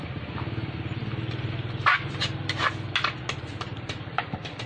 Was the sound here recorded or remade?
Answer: recorded